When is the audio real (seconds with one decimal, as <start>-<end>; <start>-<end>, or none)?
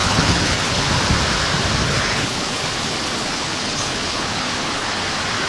0.9-1.8; 5.1-5.5